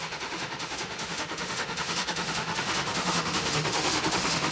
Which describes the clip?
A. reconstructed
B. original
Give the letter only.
A